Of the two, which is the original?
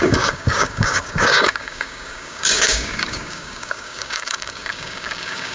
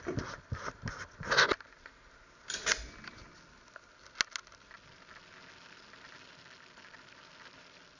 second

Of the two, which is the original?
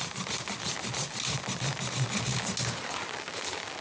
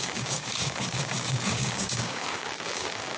first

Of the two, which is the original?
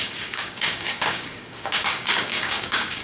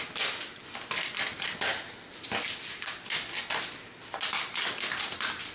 second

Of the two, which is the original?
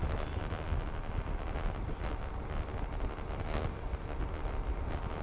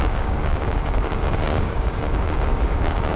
first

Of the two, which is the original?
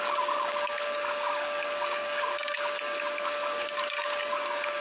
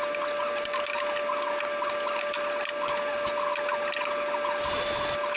second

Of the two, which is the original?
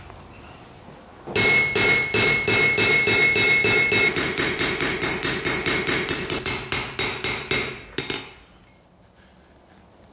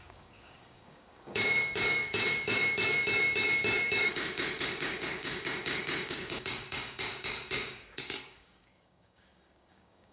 first